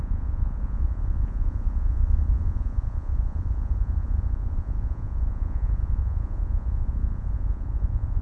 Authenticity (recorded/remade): remade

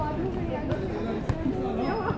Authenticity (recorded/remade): recorded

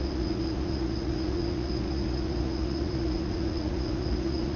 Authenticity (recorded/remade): remade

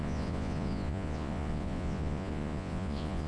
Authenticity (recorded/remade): remade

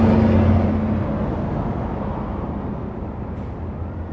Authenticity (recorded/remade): recorded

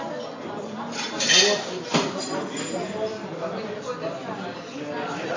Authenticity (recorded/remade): recorded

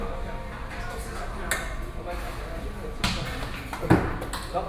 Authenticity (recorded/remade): recorded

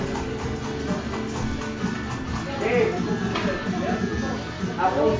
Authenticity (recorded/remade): recorded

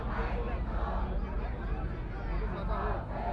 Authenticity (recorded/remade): recorded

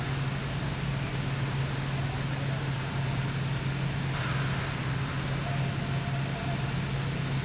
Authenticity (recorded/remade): recorded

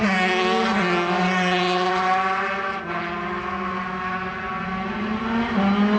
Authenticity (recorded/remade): recorded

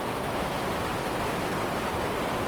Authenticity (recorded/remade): recorded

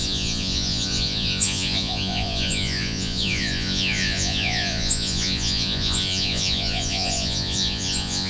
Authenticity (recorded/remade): remade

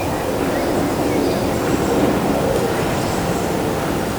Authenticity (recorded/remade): recorded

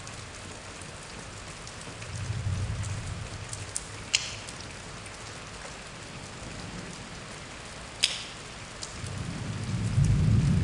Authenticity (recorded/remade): recorded